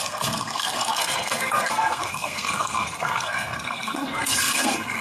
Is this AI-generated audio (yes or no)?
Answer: yes